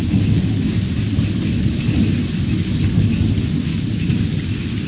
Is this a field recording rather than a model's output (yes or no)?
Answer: yes